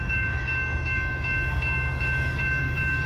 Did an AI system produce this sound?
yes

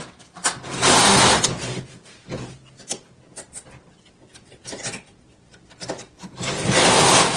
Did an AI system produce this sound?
no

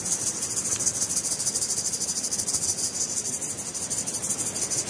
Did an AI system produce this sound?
no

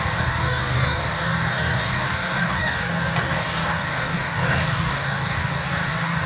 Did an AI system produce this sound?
yes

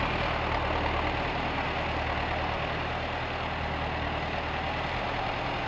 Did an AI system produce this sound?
no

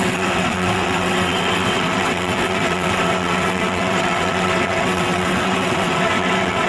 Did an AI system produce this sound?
yes